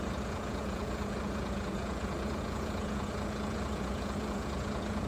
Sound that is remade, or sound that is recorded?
remade